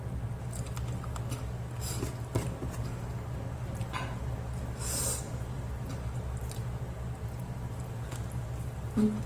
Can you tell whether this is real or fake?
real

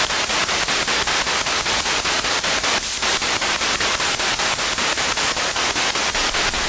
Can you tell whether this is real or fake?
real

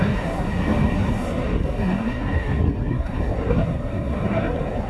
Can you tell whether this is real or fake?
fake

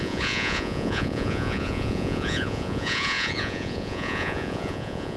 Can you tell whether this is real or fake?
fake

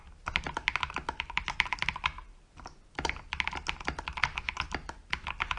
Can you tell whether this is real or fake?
real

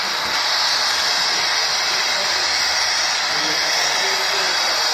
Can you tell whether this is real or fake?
real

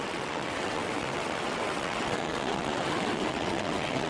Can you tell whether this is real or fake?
fake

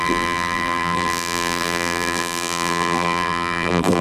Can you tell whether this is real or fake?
fake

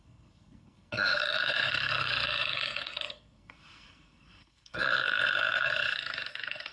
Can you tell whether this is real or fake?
fake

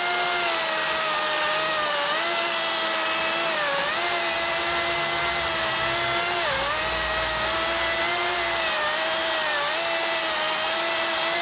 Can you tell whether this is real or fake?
real